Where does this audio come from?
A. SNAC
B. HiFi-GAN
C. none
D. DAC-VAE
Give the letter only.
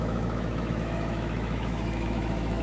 D